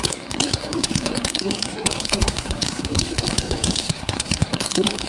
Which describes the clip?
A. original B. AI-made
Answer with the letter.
B